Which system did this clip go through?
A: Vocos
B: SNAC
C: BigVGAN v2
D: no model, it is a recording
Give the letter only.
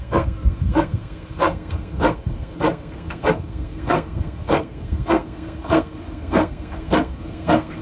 B